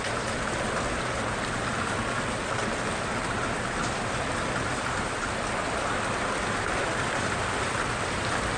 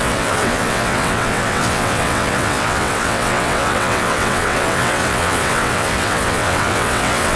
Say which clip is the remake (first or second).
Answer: second